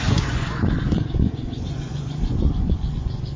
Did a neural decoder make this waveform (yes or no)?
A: yes